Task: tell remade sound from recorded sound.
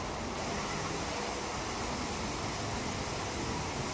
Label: recorded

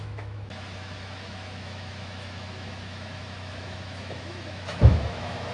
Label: remade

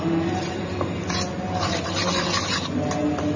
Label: recorded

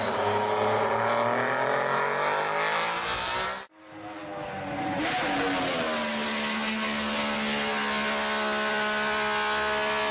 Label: recorded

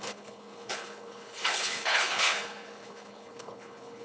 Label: remade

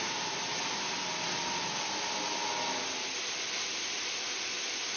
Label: recorded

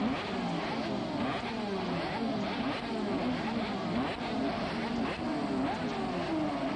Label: recorded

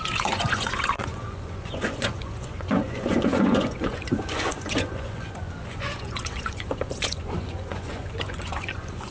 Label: remade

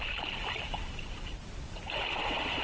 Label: remade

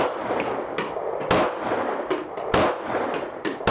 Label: recorded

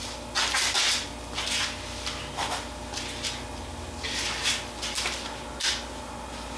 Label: recorded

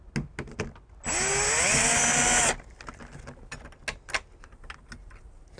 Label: recorded